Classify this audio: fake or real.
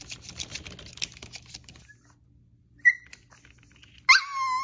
real